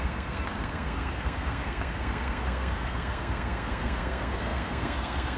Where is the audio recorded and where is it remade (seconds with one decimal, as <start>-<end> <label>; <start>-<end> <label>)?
0.0-5.4 remade